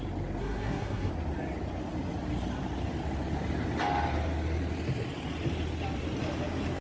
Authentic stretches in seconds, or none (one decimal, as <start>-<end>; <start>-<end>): 0.0-0.4; 1.1-6.8